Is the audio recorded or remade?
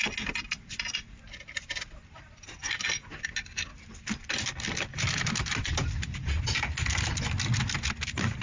recorded